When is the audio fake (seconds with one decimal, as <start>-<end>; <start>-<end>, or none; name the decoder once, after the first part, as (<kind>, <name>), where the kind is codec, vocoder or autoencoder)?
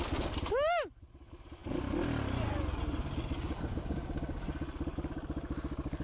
none